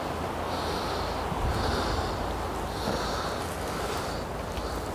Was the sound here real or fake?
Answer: real